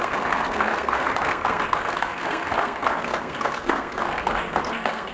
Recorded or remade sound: remade